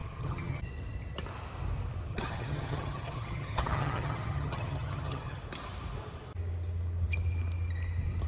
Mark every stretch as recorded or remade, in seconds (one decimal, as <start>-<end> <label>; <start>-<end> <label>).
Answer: 0.0-0.6 remade; 0.6-2.1 recorded; 2.1-5.4 remade; 5.4-8.3 recorded